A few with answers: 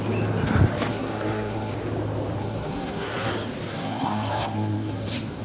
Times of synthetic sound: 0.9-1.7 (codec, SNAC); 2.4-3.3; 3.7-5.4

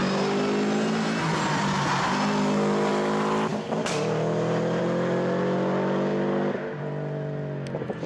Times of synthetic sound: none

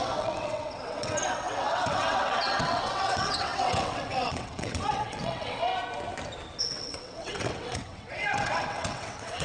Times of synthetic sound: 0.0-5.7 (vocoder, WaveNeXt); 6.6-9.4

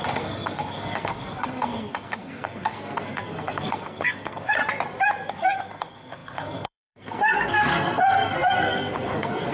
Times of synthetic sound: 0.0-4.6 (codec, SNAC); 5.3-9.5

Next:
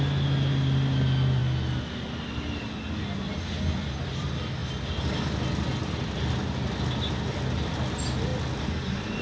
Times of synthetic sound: none